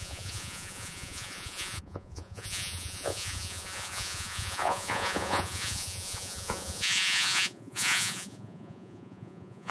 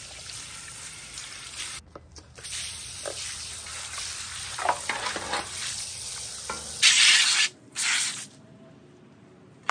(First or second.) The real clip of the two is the second